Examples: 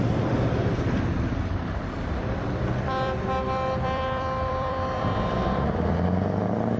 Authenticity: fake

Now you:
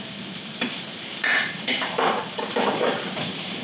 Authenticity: fake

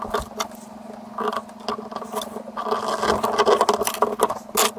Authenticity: real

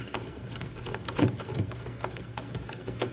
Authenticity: fake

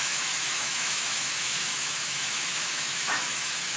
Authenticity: fake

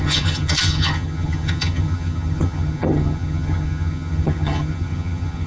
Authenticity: fake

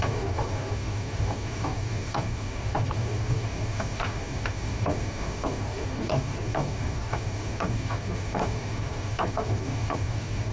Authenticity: fake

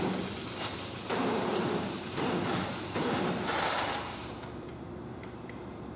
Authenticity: fake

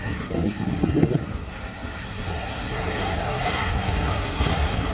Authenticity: fake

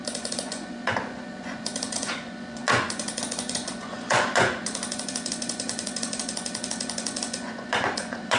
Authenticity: fake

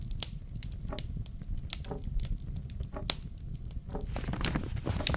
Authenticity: real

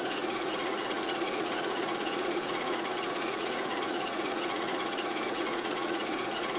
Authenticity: fake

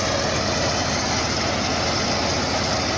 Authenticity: real